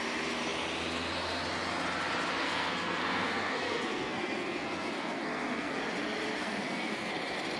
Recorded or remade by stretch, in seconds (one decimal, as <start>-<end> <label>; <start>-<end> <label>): 0.0-2.4 recorded; 2.4-5.8 remade; 5.8-6.4 recorded; 6.4-7.1 remade; 7.1-7.6 recorded